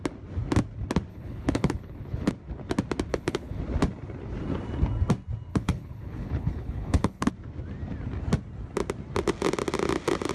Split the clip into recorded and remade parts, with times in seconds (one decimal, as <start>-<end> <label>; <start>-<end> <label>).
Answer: 0.0-1.1 recorded; 1.1-2.3 remade; 2.3-3.1 recorded; 3.1-3.6 remade; 3.6-5.5 recorded; 5.5-7.3 remade; 7.3-10.3 recorded